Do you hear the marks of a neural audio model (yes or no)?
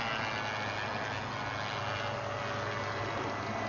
no